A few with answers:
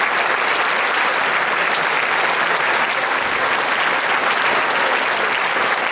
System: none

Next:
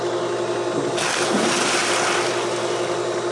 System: none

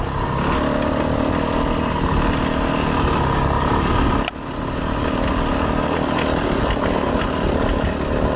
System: none